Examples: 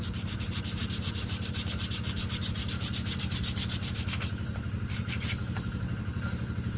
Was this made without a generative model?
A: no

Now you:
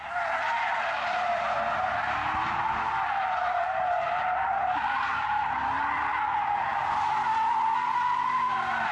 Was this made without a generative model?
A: yes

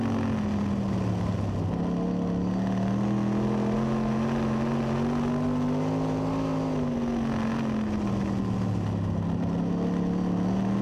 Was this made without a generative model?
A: yes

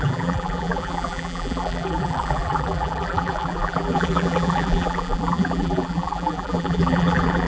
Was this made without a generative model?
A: no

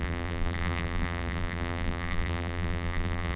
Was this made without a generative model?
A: no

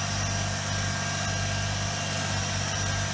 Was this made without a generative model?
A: yes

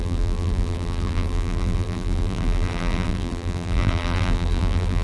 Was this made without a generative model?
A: no